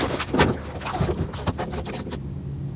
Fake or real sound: real